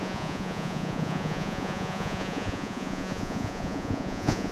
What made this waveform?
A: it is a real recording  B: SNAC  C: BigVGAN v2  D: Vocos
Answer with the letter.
D